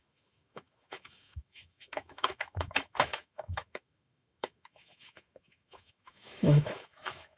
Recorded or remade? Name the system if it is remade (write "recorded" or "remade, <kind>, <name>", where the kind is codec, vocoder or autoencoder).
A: remade, autoencoder, DAC-VAE